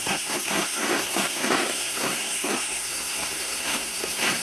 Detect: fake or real fake